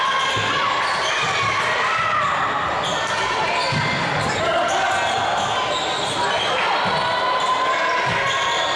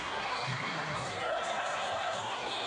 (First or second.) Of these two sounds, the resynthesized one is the second